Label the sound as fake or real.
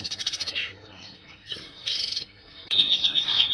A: fake